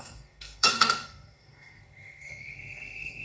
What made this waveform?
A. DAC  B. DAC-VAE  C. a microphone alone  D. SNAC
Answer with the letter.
D